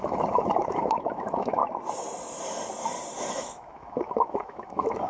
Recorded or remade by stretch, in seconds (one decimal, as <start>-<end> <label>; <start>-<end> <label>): 0.0-1.6 remade; 1.6-3.3 recorded; 3.3-5.1 remade